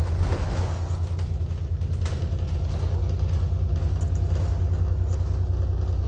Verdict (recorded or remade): recorded